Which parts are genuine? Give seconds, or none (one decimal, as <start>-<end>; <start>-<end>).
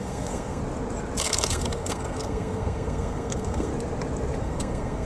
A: 0.6-1.2; 3.7-4.4